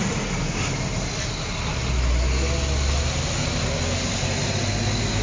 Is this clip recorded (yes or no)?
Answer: yes